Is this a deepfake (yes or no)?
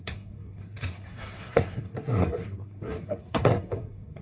yes